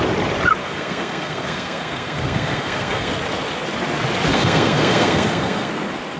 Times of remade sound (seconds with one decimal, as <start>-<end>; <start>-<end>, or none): 0.6-3.1; 4.3-5.7